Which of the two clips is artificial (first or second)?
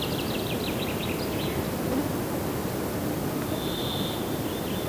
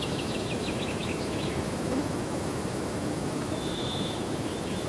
second